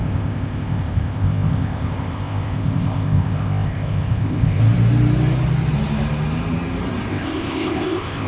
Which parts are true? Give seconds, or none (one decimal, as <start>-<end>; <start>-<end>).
4.6-7.1